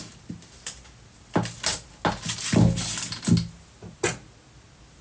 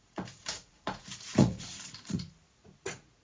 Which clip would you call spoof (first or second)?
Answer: second